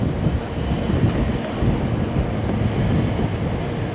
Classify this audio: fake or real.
real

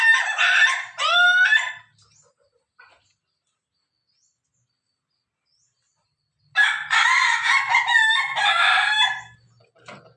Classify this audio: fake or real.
real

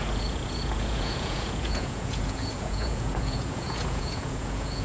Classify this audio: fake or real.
fake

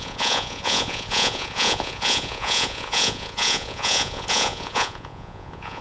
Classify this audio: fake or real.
fake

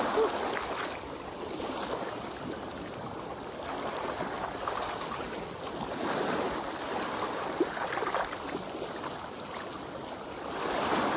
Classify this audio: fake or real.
real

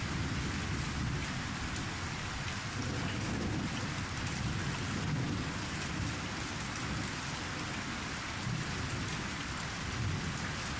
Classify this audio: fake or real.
real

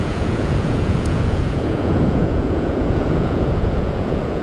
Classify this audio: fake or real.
fake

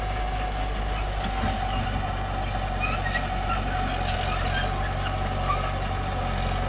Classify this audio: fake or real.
real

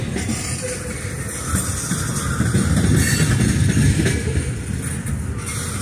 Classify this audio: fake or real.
real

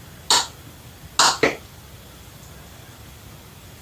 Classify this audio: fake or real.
real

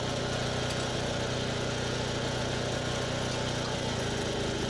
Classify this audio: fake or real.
fake